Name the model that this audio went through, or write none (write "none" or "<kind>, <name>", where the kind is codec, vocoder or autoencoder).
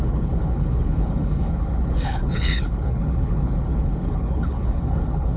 codec, HILCodec